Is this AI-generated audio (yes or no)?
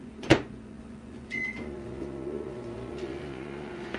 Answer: yes